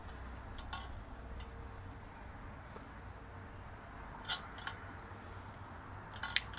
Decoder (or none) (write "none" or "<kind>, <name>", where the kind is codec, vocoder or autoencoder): none